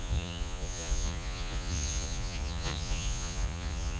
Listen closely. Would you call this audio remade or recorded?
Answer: remade